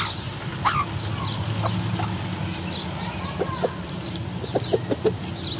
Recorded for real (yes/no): yes